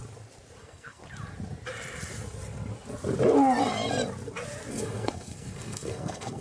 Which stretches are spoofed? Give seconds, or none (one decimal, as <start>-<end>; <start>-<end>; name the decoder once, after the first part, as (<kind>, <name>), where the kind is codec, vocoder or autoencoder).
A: 0.6-1.0 (codec, SNAC); 4.7-6.4